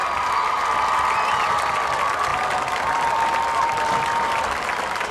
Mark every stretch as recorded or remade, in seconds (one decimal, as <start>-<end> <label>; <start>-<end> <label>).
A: 0.0-1.5 remade; 1.5-2.3 recorded; 2.3-5.1 remade